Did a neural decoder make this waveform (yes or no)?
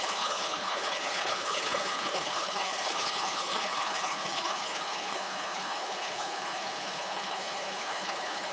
yes